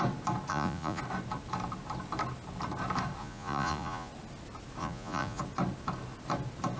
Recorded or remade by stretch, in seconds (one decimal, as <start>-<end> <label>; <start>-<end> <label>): 0.0-0.5 recorded; 0.5-1.0 remade; 1.0-3.2 recorded; 3.2-4.1 remade; 4.1-4.8 recorded; 4.8-5.4 remade; 5.4-6.8 recorded

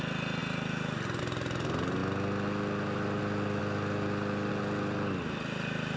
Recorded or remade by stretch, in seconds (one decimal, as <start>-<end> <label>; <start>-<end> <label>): 0.0-6.0 recorded

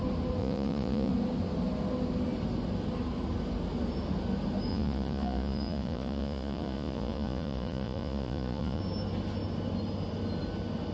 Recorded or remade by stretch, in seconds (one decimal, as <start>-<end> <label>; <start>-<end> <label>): 0.0-0.4 recorded; 0.4-1.1 remade; 1.1-4.7 recorded; 4.7-8.8 remade; 8.8-10.9 recorded

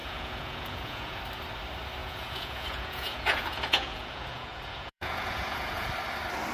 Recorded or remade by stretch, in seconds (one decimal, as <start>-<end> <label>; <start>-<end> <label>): 0.0-1.2 remade; 1.2-2.0 recorded; 2.0-5.9 remade; 5.9-6.5 recorded

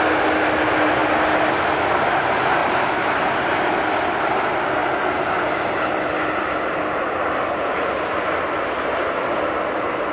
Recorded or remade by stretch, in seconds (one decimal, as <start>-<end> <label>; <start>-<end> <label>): 0.0-10.1 recorded

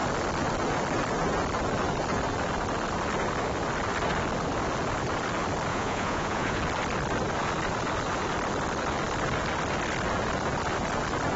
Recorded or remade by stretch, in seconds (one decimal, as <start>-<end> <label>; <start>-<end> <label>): 0.0-5.7 recorded; 5.7-6.6 remade; 6.6-11.4 recorded